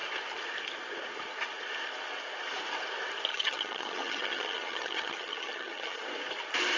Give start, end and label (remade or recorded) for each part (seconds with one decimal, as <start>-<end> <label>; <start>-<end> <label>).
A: 0.0-3.3 recorded; 3.3-6.0 remade; 6.0-6.8 recorded